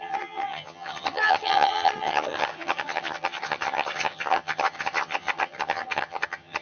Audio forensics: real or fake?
fake